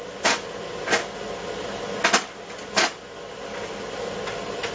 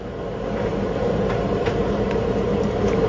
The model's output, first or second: second